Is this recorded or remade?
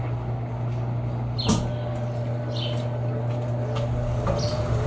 recorded